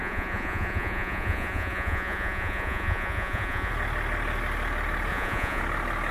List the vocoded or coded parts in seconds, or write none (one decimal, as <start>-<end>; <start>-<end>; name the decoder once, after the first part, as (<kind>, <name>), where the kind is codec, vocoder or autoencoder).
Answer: 0.0-3.7 (vocoder, Vocos); 5.1-5.6